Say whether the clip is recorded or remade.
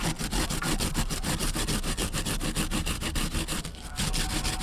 recorded